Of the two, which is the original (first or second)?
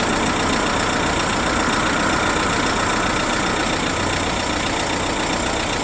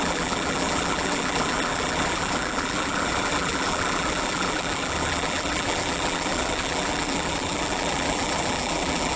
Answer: first